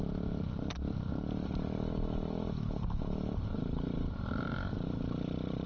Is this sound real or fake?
real